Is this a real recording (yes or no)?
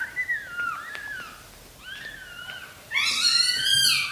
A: yes